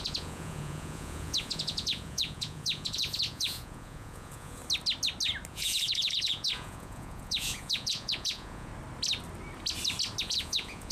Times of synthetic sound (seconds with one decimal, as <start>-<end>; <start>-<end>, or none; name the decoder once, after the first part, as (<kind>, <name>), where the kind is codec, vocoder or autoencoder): 0.0-4.6 (vocoder, Vocos); 5.5-8.7; 10.2-10.9